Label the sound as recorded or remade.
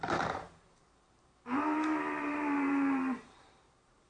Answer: remade